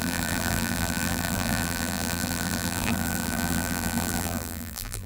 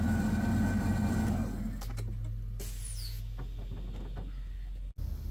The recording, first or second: second